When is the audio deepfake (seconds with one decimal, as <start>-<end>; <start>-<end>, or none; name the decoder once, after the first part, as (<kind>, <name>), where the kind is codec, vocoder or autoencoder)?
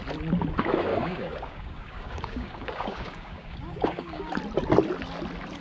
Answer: 0.9-4.3 (codec, DAC)